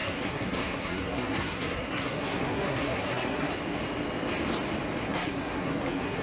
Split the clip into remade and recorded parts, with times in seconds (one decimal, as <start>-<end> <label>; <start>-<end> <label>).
0.0-3.5 remade; 3.5-5.0 recorded; 5.0-6.2 remade